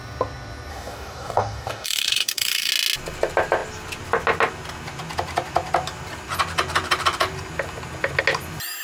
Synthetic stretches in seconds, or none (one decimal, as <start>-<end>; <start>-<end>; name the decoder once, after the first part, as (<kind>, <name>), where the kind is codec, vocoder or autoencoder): 0.7-2.7 (codec, DAC)